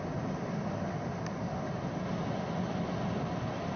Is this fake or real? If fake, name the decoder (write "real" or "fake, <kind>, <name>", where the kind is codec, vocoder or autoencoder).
real